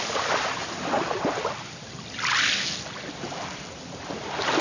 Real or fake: real